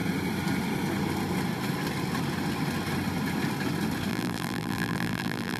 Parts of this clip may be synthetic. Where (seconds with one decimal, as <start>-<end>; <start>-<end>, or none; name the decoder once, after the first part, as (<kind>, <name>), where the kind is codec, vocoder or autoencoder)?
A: 4.1-5.6 (vocoder, BigVGAN v2)